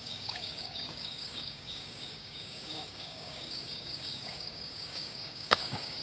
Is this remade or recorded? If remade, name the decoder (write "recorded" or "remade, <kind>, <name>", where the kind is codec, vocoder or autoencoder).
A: remade, codec, DAC